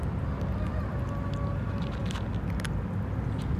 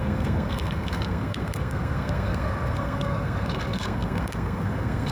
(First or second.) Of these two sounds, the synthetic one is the second